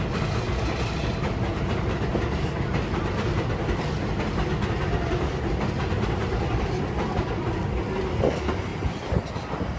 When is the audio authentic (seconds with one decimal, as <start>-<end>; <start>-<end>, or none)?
0.0-8.7; 9.3-9.8